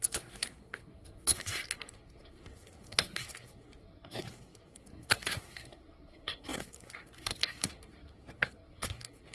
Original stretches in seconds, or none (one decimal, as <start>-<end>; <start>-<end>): none